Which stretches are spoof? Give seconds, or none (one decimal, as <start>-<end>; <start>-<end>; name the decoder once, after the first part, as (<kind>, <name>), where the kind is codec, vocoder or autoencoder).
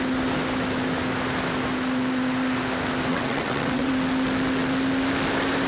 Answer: 3.1-3.9 (vocoder, WaveNeXt)